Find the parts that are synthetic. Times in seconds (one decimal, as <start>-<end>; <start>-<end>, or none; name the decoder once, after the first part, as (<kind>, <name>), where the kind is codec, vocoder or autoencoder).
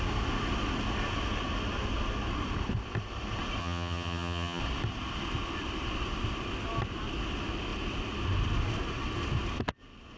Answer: 3.6-4.6 (vocoder, HiFi-GAN)